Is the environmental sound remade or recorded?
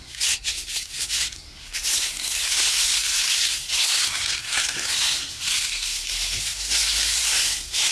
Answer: remade